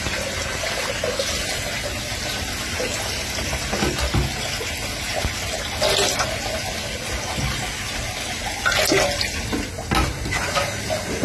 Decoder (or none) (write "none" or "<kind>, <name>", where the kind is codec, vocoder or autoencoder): none